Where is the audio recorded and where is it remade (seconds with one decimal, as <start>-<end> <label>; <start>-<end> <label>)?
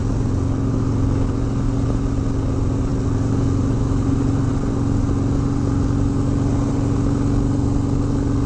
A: 0.0-8.5 recorded